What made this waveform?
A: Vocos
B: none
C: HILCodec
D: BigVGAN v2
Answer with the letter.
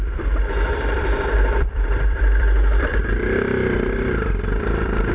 D